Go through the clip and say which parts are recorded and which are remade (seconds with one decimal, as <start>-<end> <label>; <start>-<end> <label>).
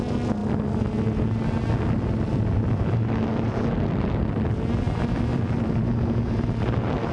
0.0-7.1 recorded